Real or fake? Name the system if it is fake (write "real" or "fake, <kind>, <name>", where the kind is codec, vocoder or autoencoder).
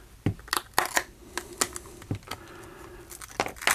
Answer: real